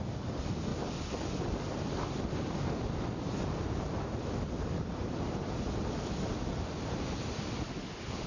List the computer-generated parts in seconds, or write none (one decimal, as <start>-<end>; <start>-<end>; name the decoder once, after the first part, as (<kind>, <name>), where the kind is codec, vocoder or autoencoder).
none

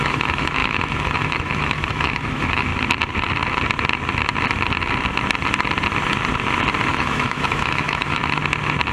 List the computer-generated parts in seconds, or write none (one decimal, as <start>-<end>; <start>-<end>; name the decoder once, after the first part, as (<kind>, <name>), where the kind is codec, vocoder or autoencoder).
0.0-2.7 (autoencoder, DAC-VAE); 6.9-8.2

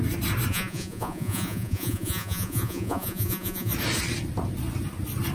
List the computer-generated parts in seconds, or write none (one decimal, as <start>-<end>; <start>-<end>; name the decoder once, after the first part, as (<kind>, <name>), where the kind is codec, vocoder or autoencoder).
0.5-3.7 (vocoder, Vocos)

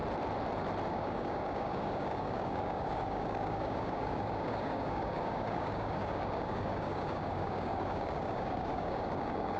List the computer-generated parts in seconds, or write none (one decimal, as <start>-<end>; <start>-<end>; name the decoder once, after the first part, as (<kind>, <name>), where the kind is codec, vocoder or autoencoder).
0.9-9.6 (codec, DAC)

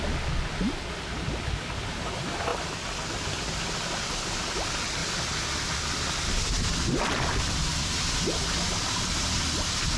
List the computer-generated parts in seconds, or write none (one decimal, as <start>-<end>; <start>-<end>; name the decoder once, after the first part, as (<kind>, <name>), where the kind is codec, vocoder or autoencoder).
none

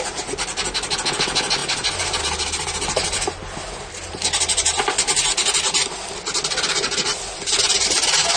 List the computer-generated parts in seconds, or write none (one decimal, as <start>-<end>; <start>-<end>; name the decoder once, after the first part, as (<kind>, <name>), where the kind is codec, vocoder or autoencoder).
none

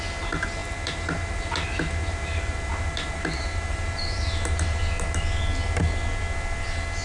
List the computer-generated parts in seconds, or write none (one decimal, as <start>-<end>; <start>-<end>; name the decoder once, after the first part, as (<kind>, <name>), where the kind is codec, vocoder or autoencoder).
0.6-4.8 (vocoder, BigVGAN v2)

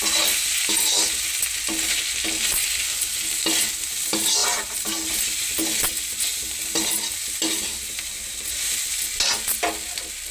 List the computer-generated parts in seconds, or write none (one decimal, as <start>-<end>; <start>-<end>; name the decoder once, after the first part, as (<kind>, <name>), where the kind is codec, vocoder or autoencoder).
4.4-5.4 (vocoder, BigVGAN v2)